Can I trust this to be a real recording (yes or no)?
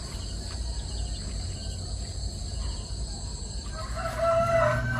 yes